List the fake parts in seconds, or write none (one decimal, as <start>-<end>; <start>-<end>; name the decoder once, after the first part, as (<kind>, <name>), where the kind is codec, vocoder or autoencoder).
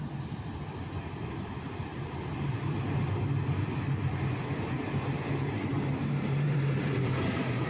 5.7-7.7 (vocoder, BigVGAN v2)